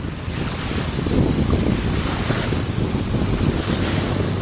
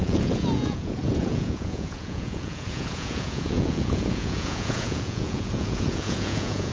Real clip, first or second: first